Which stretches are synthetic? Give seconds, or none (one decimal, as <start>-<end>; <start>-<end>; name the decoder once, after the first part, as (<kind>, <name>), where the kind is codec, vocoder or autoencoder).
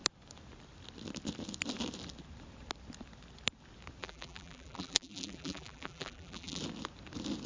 4.0-6.6 (vocoder, BigVGAN v2)